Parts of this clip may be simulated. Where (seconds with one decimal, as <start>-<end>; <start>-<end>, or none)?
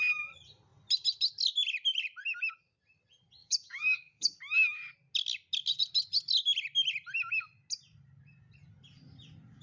3.4-4.4